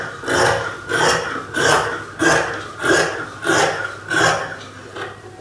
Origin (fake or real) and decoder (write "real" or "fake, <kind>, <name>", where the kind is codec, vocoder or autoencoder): real